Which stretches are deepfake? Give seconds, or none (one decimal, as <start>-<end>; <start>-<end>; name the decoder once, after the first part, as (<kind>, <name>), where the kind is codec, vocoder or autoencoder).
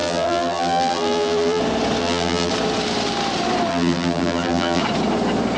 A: 0.0-1.6 (vocoder, BigVGAN v2); 2.0-2.5; 3.7-4.8